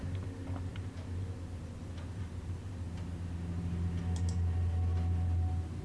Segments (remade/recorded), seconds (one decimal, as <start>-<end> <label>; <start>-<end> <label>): 0.0-5.8 recorded

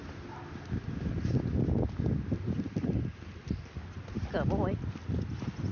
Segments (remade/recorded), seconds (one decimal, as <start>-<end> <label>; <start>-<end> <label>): 0.0-5.7 recorded

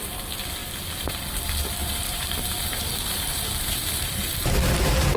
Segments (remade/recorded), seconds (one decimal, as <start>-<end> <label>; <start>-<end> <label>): 0.0-1.8 recorded; 1.8-5.2 remade

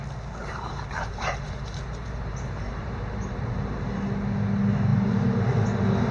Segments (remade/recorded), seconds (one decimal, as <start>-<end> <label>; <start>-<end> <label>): 0.0-0.4 recorded; 0.4-4.1 remade; 4.1-4.9 recorded; 4.9-5.5 remade; 5.5-6.1 recorded

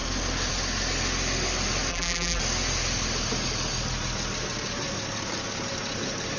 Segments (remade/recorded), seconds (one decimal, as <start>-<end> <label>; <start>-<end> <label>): 0.0-1.9 recorded; 1.9-2.4 remade; 2.4-6.4 recorded

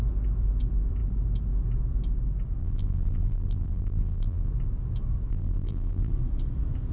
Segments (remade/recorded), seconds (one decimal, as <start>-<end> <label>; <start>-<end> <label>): 0.0-2.6 recorded; 2.6-4.5 remade; 4.5-5.3 recorded; 5.3-6.1 remade; 6.1-6.9 recorded

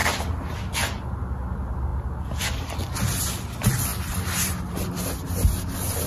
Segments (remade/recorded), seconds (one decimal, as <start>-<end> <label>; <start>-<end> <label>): 0.0-0.6 remade; 0.6-3.9 recorded; 3.9-5.1 remade; 5.1-6.1 recorded

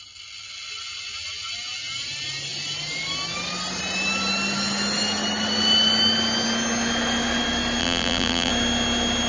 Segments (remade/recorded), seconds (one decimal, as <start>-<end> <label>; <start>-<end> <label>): 0.0-7.8 recorded; 7.8-8.5 remade; 8.5-9.3 recorded